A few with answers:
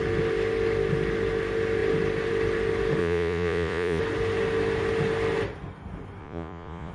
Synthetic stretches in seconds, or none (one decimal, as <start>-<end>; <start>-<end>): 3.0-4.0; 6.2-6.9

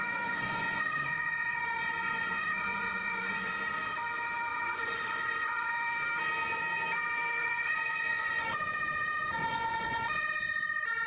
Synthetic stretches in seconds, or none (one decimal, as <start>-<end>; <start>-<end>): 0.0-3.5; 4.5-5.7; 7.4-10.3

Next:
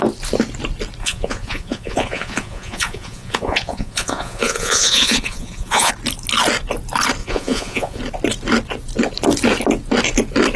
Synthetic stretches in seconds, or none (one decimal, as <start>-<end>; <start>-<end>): 1.0-5.9; 7.2-8.0

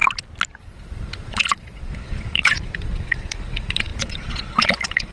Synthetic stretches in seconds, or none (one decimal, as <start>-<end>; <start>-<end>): 0.6-5.1